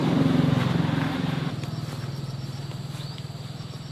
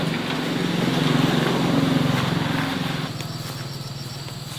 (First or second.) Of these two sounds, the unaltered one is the second